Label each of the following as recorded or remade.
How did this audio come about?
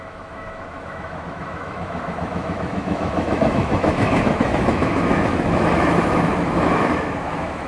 remade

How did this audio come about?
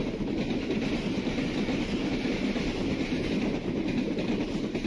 recorded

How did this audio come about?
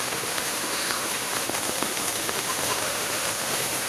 remade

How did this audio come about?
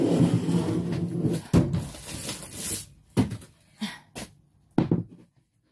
recorded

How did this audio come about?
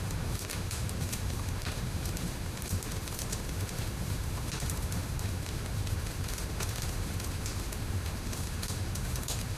remade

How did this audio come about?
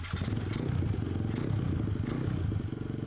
recorded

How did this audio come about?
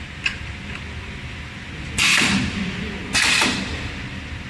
recorded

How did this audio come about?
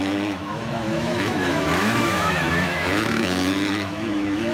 remade